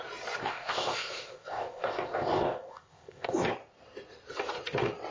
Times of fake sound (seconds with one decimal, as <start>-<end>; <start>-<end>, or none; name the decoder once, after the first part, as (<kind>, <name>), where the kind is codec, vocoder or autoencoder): 0.4-3.5 (codec, ZipCodec)